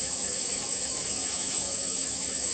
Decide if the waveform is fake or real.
fake